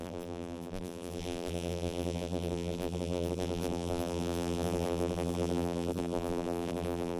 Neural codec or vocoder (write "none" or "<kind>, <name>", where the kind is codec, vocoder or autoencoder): vocoder, BigVGAN v2